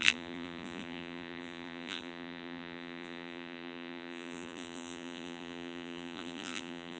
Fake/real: fake